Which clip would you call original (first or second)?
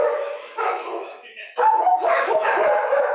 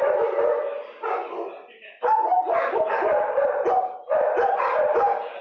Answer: second